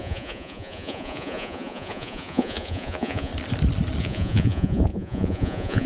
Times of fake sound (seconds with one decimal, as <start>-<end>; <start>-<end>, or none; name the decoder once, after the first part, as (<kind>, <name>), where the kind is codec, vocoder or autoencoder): 0.0-3.3 (vocoder, Vocos); 4.0-5.9